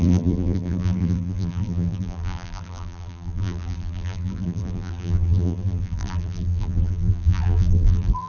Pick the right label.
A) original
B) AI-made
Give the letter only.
B